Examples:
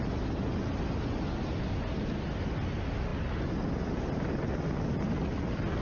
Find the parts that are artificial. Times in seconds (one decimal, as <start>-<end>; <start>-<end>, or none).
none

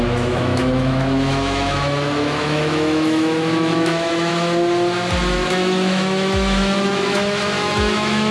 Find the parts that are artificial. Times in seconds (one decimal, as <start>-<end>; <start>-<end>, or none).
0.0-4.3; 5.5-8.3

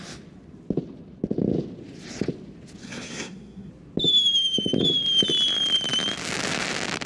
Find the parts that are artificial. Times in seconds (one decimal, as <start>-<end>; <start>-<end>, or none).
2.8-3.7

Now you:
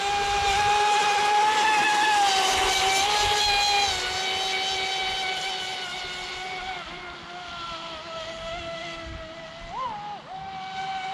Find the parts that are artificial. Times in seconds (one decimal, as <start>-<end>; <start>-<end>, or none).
none

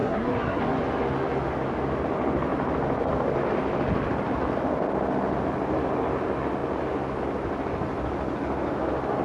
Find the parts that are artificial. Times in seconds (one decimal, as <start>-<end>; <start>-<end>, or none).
0.0-0.6

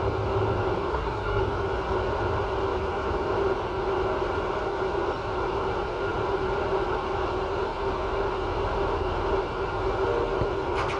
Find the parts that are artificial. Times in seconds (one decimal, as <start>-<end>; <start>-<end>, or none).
0.9-1.4

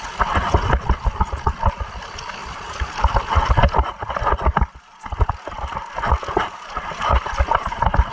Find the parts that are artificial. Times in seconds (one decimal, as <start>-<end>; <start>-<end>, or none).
none

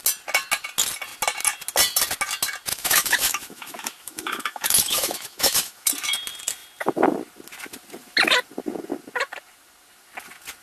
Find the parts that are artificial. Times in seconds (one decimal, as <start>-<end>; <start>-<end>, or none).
2.7-5.9